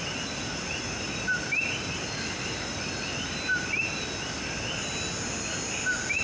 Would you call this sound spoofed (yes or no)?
no